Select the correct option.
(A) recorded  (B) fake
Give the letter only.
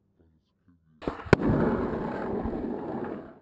A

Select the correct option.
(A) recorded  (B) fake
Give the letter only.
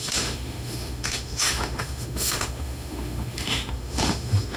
B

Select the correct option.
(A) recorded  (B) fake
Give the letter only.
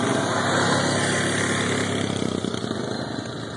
A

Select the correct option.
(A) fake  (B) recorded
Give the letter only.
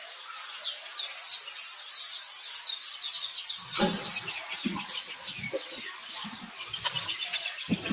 B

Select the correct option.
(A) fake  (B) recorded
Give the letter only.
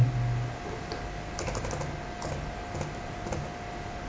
B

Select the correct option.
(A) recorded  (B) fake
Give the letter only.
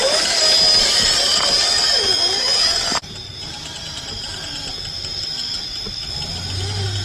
A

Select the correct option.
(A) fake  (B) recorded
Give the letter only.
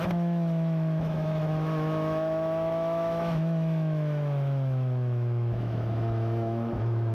A